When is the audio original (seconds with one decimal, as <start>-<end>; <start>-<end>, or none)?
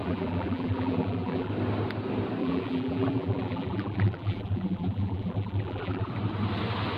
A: 1.5-2.4; 6.1-7.0